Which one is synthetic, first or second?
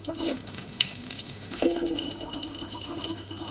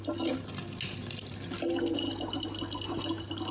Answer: first